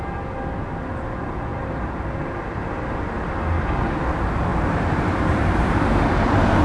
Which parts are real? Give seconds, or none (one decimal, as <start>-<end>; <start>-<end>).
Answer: 0.0-1.5; 2.6-4.5; 6.0-6.6